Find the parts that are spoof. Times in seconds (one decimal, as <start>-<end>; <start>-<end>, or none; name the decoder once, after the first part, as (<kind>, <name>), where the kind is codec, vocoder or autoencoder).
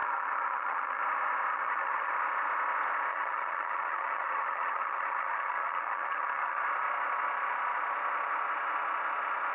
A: 0.0-1.0 (vocoder, HiFi-GAN); 1.5-2.1; 3.1-6.6